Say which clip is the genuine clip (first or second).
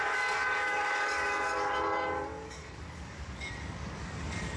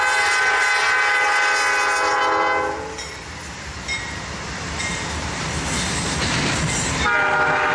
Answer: second